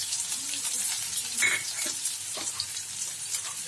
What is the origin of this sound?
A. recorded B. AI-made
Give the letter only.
B